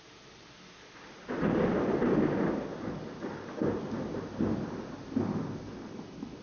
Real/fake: real